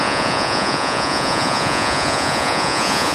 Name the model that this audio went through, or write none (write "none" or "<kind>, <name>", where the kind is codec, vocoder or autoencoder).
vocoder, Vocos